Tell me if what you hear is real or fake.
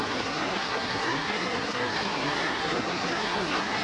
fake